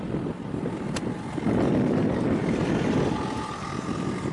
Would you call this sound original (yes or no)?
yes